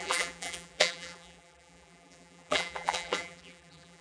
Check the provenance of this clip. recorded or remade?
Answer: remade